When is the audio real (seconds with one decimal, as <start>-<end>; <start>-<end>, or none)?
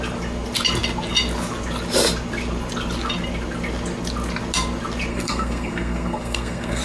0.0-5.1